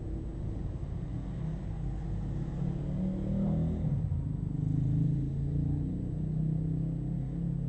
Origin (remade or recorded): recorded